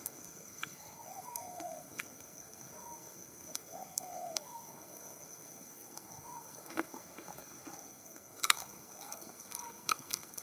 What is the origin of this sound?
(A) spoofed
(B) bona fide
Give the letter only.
A